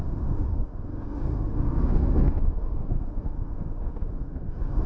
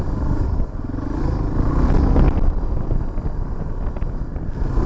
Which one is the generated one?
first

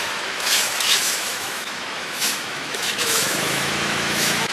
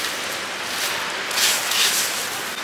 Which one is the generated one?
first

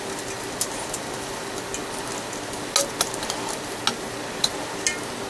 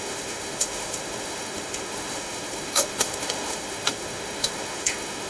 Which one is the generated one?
second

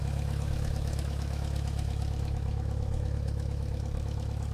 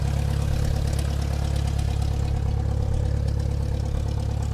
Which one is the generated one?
first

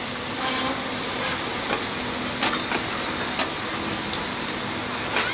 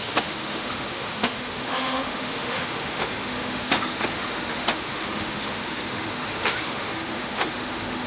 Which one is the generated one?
second